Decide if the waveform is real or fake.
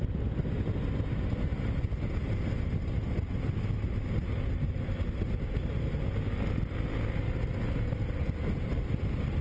real